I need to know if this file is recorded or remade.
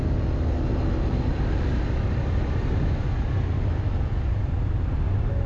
recorded